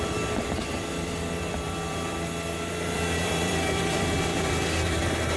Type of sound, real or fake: fake